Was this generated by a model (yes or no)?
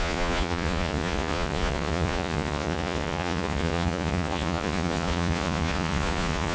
yes